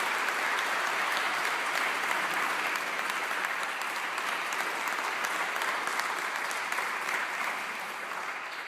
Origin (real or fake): real